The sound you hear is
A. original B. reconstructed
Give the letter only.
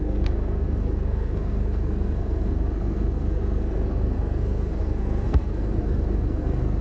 B